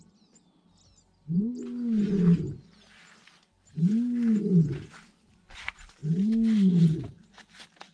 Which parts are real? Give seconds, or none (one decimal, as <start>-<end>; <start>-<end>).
0.0-7.9